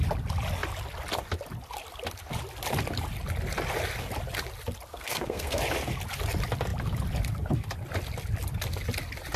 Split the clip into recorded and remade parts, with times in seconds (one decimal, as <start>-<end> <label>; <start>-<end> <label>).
0.0-4.9 recorded; 4.9-5.6 remade; 5.6-9.4 recorded